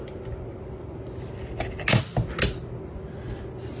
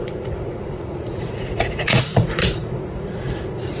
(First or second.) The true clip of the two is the first